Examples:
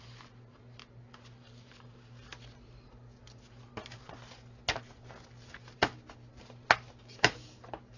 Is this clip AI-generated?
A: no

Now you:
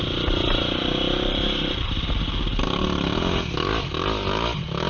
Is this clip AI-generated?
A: no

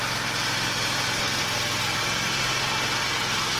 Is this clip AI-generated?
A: no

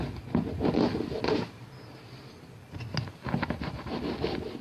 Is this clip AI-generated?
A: no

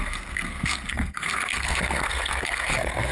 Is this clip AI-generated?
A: yes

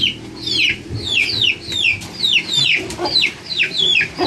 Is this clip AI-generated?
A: yes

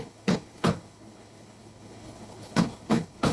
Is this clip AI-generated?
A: yes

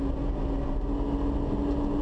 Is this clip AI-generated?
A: no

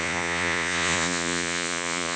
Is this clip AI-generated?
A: yes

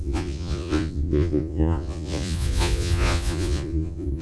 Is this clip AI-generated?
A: yes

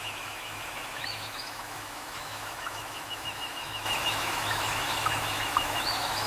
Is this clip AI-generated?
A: yes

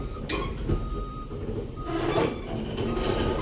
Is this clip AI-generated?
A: yes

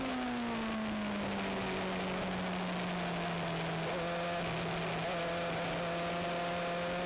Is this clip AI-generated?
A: no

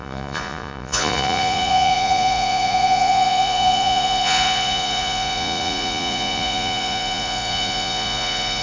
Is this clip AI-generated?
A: yes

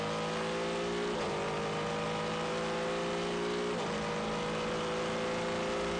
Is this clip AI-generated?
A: no